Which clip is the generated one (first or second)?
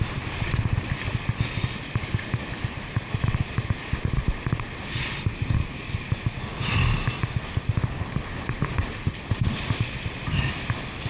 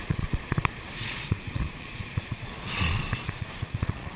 second